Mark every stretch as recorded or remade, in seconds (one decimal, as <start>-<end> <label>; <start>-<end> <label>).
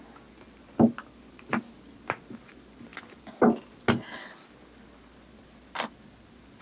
0.0-6.6 recorded